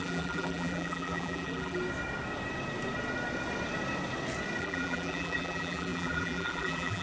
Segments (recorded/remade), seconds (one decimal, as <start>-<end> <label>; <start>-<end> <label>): 0.0-1.8 remade; 1.8-4.6 recorded; 4.6-7.0 remade